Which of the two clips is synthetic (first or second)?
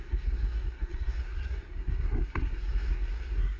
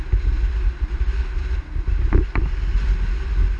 first